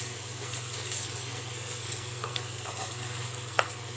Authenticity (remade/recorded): remade